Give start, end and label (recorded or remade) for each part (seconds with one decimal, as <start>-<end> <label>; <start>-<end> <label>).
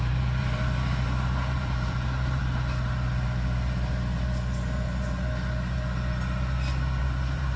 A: 0.0-2.4 remade; 2.4-7.0 recorded; 7.0-7.6 remade